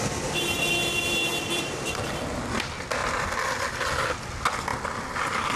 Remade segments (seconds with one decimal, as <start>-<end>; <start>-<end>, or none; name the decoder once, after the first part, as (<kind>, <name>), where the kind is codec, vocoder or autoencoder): 0.8-2.0 (vocoder, BigVGAN v2)